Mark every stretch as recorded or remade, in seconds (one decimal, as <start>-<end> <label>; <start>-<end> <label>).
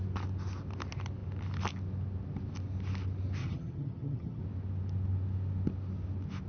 0.0-3.4 recorded; 3.4-4.4 remade; 4.4-6.5 recorded